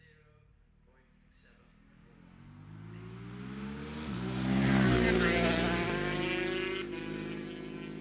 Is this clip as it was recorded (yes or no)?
yes